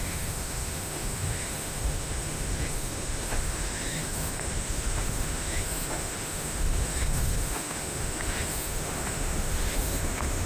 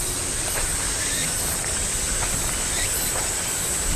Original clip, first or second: second